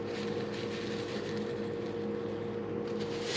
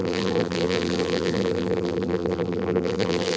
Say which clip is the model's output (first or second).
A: second